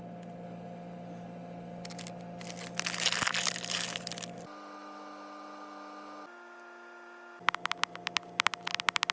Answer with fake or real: real